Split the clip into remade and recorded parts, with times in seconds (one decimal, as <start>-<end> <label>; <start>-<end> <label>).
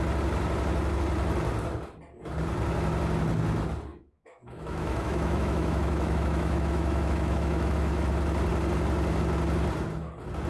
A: 0.0-3.9 recorded; 3.9-8.1 remade; 8.1-10.5 recorded